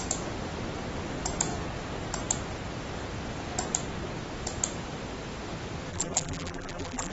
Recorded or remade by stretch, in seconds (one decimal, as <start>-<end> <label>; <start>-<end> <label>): 0.0-5.9 recorded; 5.9-7.1 remade